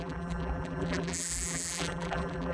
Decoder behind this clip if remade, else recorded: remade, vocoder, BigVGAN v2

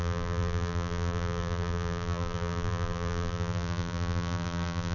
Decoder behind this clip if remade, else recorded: remade, vocoder, BigVGAN v2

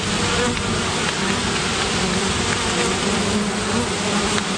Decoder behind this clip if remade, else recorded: recorded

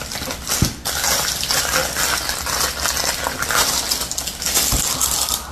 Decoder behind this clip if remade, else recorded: recorded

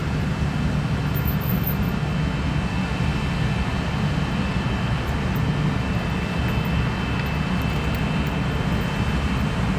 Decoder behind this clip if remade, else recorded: recorded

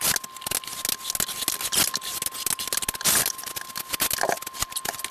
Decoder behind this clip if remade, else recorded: recorded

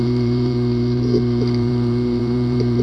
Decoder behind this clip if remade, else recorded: remade, vocoder, BigVGAN v2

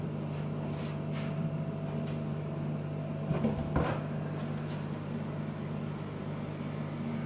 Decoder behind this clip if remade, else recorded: remade, vocoder, BigVGAN v2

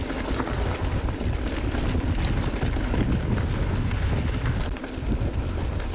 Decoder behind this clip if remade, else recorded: recorded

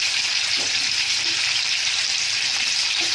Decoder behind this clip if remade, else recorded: remade, vocoder, BigVGAN v2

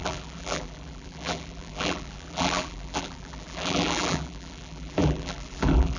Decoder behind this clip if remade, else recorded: remade, vocoder, BigVGAN v2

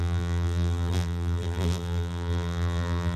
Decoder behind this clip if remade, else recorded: remade, vocoder, BigVGAN v2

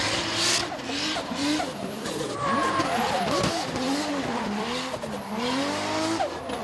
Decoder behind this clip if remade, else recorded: remade, vocoder, BigVGAN v2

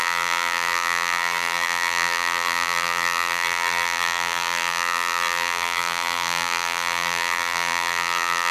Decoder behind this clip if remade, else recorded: remade, vocoder, BigVGAN v2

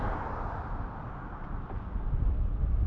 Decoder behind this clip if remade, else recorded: recorded